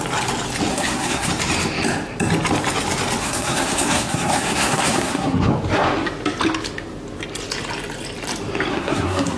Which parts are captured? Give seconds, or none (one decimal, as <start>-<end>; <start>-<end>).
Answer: 0.0-0.7; 1.3-3.2; 5.5-8.7